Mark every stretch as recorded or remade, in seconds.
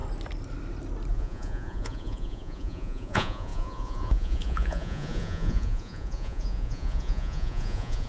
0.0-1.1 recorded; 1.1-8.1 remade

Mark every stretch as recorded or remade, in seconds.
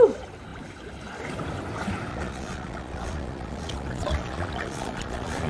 0.0-2.1 recorded; 2.1-5.5 remade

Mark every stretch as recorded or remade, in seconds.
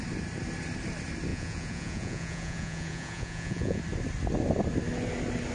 0.0-1.3 recorded; 1.3-3.8 remade; 3.8-5.5 recorded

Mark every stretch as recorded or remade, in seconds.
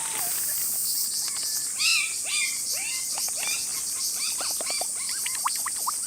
0.0-6.1 recorded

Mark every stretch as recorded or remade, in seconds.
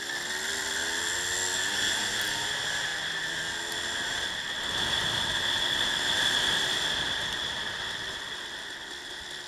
0.0-9.5 recorded